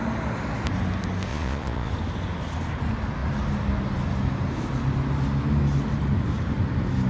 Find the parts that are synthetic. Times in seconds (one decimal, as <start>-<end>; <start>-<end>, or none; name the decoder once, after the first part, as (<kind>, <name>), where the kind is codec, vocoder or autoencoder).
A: 1.3-1.9 (vocoder, Vocos)